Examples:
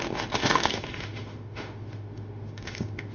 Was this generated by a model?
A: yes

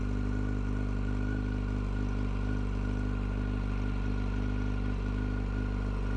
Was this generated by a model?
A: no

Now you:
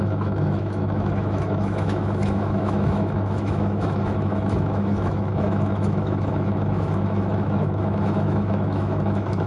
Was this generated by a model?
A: yes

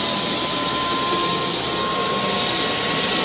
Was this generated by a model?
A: no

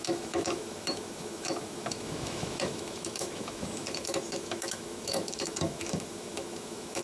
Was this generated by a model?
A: yes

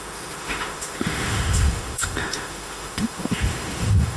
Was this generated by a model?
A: yes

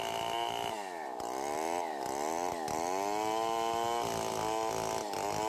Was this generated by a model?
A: no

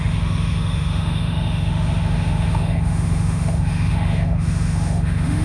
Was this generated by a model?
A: yes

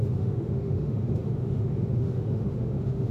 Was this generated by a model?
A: yes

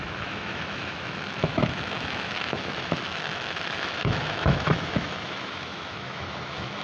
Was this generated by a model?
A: yes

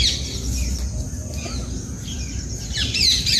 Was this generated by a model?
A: no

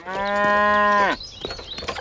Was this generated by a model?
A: no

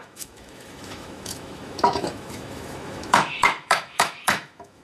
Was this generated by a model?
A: yes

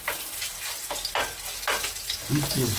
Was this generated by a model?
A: no